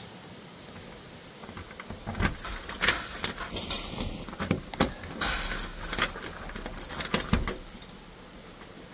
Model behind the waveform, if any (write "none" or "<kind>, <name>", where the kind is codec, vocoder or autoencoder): none